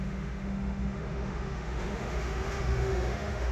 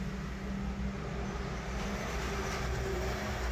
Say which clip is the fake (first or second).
first